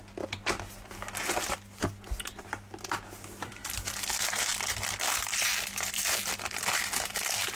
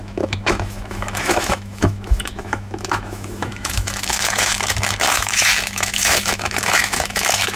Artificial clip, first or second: second